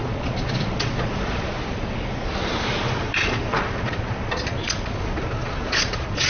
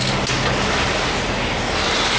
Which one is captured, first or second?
second